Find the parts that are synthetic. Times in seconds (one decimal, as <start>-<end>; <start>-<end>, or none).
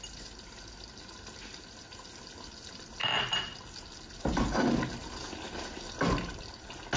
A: none